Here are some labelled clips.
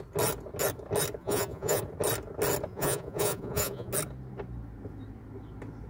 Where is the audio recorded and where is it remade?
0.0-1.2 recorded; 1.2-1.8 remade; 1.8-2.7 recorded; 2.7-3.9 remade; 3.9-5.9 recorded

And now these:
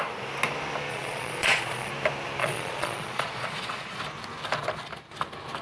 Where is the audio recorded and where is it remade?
0.0-0.9 recorded; 0.9-1.9 remade; 1.9-2.4 recorded; 2.4-4.0 remade; 4.0-5.6 recorded

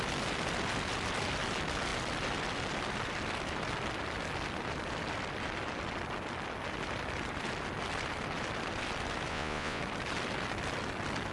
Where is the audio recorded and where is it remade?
0.0-9.3 recorded; 9.3-9.8 remade; 9.8-11.3 recorded

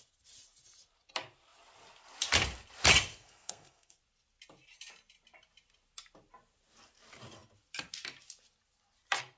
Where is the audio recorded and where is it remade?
0.0-3.1 recorded; 3.1-4.0 remade; 4.0-9.4 recorded

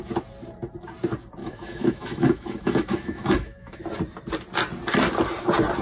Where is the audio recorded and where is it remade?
0.0-1.4 recorded; 1.4-3.8 remade; 3.8-5.8 recorded

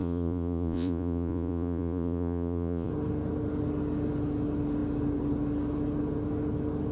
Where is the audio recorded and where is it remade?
0.0-2.9 remade; 2.9-6.9 recorded

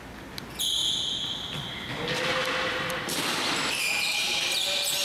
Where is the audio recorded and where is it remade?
0.0-5.0 recorded

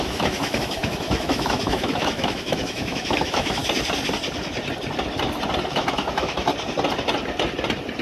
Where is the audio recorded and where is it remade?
0.0-3.6 remade; 3.6-5.7 recorded; 5.7-6.5 remade; 6.5-8.0 recorded